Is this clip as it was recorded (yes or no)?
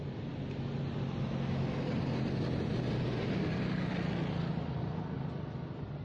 yes